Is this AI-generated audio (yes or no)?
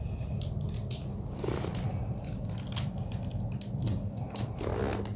no